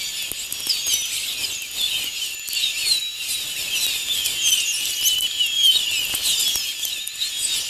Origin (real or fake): real